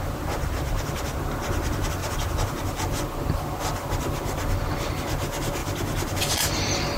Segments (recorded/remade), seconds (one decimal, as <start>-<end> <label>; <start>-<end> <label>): 0.0-2.0 recorded; 2.0-3.0 remade; 3.0-7.0 recorded